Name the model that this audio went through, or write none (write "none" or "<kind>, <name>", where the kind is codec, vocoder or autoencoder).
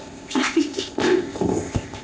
codec, ZipCodec